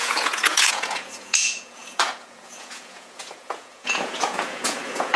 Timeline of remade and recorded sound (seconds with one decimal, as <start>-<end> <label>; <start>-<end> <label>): 0.0-5.2 remade